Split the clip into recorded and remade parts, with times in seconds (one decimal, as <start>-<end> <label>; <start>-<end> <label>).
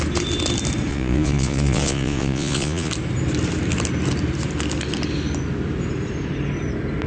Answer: 0.0-0.9 recorded; 0.9-2.9 remade; 2.9-7.1 recorded